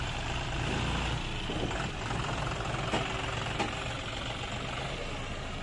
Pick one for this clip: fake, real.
real